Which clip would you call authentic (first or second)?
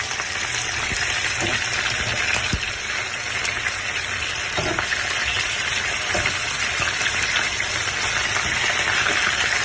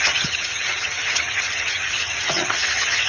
first